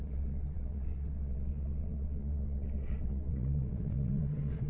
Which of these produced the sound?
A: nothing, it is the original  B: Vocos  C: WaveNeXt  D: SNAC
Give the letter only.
C